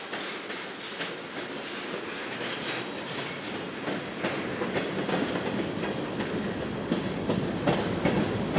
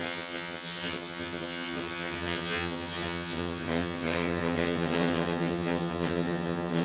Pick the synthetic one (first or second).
second